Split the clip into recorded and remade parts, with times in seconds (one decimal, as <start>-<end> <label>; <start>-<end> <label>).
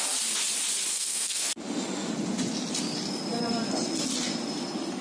0.0-0.9 recorded; 0.9-1.6 remade; 1.6-5.0 recorded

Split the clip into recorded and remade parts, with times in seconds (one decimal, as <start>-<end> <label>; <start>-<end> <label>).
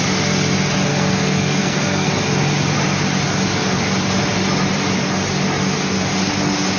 0.0-0.9 recorded; 0.9-2.1 remade; 2.1-6.8 recorded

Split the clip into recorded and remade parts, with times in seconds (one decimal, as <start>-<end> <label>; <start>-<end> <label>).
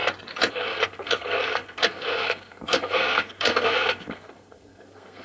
0.0-0.5 recorded; 0.5-5.2 remade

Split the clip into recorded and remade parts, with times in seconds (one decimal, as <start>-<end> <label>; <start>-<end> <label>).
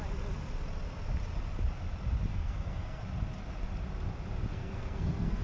0.0-2.3 recorded; 2.3-3.0 remade; 3.0-4.5 recorded; 4.5-5.4 remade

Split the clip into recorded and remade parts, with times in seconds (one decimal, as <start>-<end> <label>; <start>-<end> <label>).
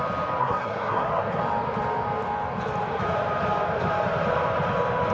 0.0-0.4 recorded; 0.4-1.4 remade; 1.4-5.1 recorded